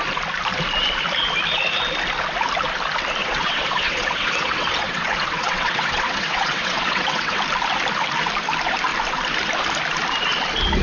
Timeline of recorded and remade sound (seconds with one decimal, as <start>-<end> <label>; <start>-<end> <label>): 0.0-3.2 recorded; 3.2-7.4 remade; 7.4-10.8 recorded